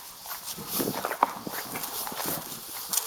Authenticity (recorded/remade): recorded